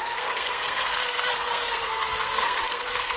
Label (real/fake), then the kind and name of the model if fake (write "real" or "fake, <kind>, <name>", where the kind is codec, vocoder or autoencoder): fake, codec, SNAC